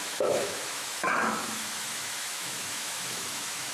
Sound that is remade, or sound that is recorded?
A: remade